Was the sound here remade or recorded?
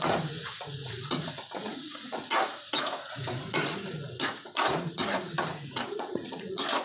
remade